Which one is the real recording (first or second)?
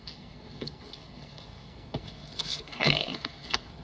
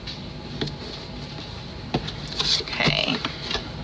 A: second